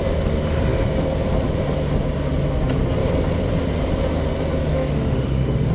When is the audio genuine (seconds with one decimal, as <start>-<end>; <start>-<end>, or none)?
0.0-4.7